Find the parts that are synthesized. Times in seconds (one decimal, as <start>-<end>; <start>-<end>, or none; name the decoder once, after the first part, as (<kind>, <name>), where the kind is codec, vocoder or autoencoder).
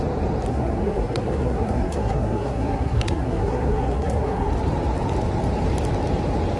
0.5-4.5 (codec, SNAC)